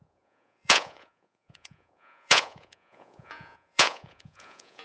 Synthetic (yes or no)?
yes